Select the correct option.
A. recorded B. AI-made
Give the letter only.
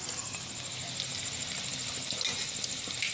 A